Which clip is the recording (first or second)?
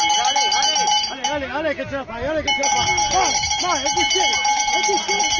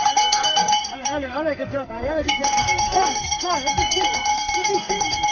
first